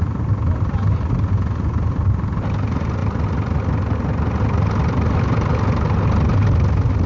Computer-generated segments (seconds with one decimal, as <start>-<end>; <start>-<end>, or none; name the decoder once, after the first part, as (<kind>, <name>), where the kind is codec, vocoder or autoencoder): none

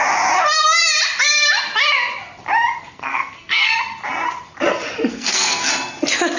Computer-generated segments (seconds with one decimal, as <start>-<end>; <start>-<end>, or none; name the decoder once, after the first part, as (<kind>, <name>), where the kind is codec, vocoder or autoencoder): 2.8-3.7 (codec, SNAC); 5.1-5.7

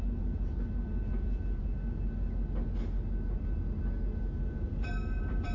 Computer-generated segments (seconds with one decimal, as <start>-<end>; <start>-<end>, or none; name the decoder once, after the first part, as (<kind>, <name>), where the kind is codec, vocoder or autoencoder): none

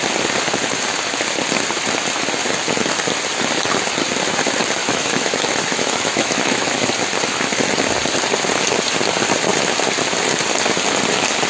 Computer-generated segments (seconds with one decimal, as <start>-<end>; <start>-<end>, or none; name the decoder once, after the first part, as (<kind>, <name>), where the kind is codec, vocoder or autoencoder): 4.8-6.9 (autoencoder, DAC-VAE)

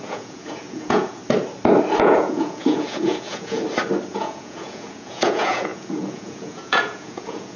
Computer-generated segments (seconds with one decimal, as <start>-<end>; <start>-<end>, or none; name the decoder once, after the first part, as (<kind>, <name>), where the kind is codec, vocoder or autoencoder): 0.0-1.2 (vocoder, Vocos); 2.0-3.6; 4.1-7.6

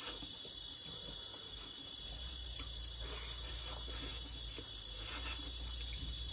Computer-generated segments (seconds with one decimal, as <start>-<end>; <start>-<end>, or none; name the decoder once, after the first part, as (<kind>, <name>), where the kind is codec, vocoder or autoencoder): none

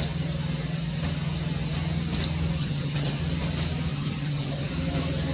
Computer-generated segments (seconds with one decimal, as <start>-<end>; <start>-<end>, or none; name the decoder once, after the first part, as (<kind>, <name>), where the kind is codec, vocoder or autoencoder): 2.6-3.2 (vocoder, HiFi-GAN); 3.9-4.7

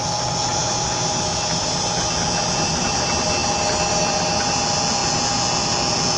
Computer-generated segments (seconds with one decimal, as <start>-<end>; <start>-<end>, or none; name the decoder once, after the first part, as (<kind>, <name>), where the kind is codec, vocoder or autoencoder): none